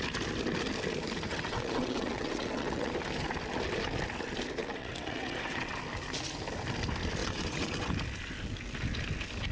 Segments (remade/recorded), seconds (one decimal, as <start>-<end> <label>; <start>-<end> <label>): 0.0-1.3 recorded; 1.3-2.9 remade; 2.9-4.6 recorded; 4.6-5.8 remade; 5.8-7.2 recorded; 7.2-7.9 remade; 7.9-9.5 recorded